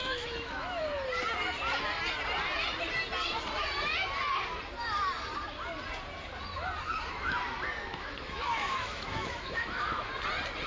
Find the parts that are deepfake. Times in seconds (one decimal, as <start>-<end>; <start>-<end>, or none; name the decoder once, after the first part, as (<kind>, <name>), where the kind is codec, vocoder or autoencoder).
0.0-0.8 (autoencoder, DAC-VAE); 7.9-10.1